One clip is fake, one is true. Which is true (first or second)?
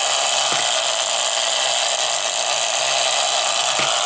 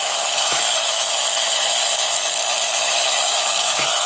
first